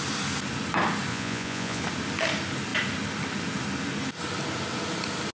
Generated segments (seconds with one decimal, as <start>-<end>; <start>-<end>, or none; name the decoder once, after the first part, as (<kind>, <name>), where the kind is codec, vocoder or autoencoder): 1.1-1.8 (vocoder, Vocos)